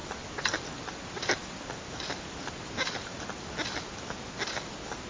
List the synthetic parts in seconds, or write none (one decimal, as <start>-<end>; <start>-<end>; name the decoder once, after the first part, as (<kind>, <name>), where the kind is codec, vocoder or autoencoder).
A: none